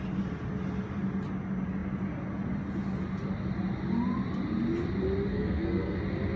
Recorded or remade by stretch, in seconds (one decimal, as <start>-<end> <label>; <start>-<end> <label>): 0.0-5.3 recorded; 5.3-6.0 remade; 6.0-6.4 recorded